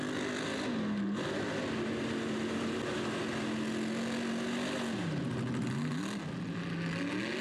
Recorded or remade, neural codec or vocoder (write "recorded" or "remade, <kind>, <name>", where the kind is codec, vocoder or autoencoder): recorded